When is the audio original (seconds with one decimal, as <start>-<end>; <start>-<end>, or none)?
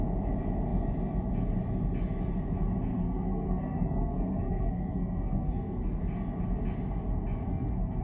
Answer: 0.0-2.9; 6.0-7.5